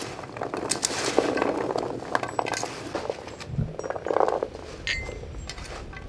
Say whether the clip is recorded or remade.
recorded